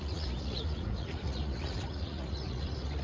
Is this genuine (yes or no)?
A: no